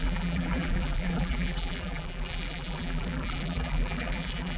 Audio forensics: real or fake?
fake